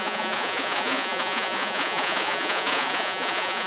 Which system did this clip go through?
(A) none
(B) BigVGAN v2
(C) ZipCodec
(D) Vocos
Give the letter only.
D